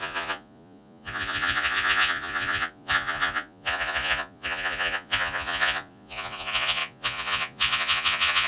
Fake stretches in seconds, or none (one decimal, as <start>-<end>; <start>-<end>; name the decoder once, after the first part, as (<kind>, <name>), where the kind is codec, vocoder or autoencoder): 0.0-8.5 (vocoder, Vocos)